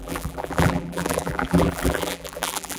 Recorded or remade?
remade